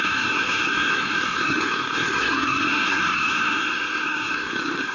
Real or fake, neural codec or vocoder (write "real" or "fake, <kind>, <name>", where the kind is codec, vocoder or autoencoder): fake, codec, SNAC